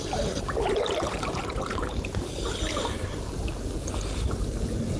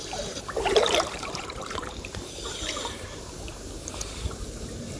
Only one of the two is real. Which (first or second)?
first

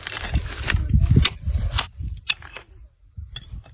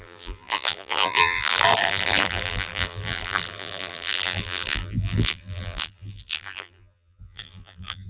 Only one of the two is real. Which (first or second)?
first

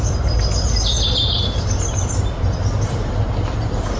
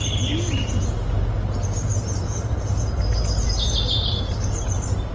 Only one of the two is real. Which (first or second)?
second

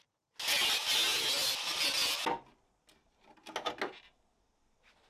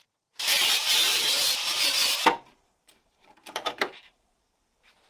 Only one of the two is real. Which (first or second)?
first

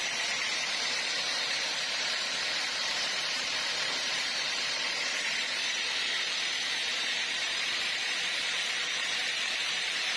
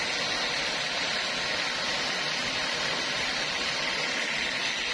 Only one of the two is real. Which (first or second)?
second